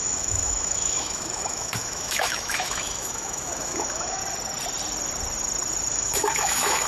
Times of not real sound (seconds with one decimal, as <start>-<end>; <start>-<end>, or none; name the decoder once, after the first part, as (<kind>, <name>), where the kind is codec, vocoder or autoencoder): 0.0-4.2 (autoencoder, DAC-VAE); 5.9-6.9